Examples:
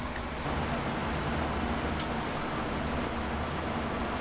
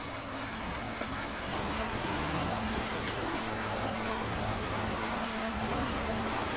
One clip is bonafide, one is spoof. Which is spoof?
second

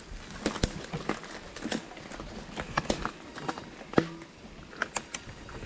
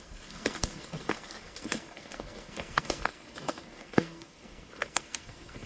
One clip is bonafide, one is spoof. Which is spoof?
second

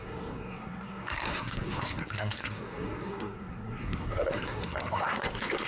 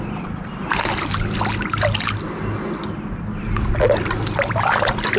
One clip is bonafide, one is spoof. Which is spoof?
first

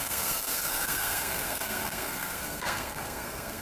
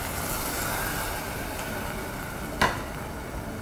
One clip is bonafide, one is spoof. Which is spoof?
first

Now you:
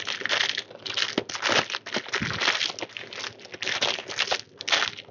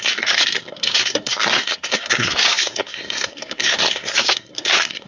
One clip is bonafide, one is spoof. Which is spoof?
second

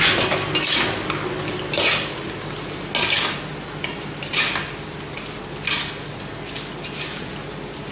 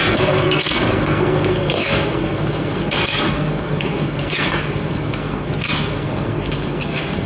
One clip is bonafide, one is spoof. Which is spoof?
second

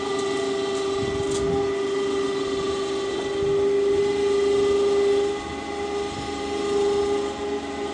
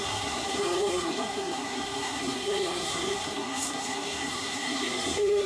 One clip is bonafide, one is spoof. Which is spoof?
second